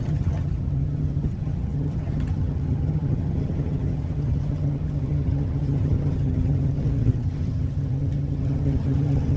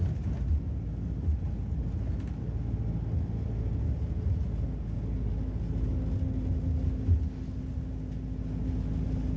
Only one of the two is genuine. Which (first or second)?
second